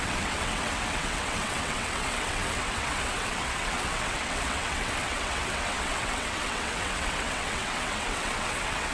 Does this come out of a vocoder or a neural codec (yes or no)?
yes